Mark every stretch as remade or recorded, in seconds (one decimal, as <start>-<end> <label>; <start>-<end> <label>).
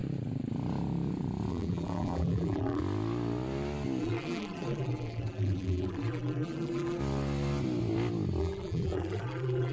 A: 0.0-1.5 recorded; 1.5-2.8 remade; 2.8-4.0 recorded; 4.0-7.0 remade; 7.0-8.4 recorded; 8.4-9.7 remade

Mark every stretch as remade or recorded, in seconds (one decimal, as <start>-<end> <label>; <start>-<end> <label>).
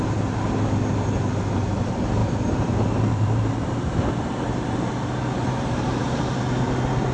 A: 0.0-2.2 recorded; 2.2-4.8 remade; 4.8-5.4 recorded; 5.4-6.4 remade; 6.4-7.1 recorded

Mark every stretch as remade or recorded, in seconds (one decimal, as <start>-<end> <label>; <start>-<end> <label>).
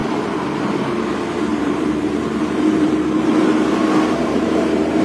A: 0.0-1.5 recorded; 1.5-3.3 remade; 3.3-4.2 recorded; 4.2-5.0 remade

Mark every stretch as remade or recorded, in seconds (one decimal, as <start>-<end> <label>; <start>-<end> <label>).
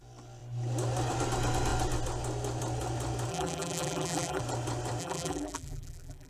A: 0.0-3.3 recorded; 3.3-4.4 remade; 4.4-5.0 recorded; 5.0-6.3 remade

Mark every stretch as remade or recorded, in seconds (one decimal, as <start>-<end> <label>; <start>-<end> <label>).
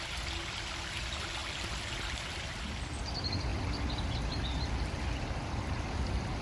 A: 0.0-6.4 recorded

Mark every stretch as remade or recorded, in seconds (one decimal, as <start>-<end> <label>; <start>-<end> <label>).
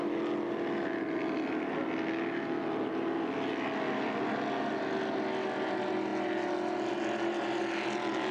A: 0.0-8.3 recorded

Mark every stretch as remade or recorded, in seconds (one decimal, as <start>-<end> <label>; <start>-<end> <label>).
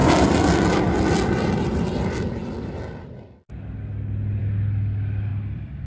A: 0.0-5.3 recorded; 5.3-5.9 remade